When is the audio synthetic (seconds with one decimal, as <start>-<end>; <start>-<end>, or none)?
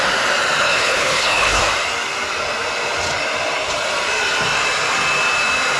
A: 0.6-1.6